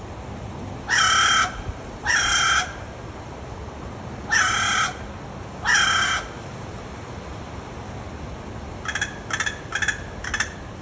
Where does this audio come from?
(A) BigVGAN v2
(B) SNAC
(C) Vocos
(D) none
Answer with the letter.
D